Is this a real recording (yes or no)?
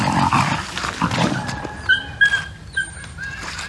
yes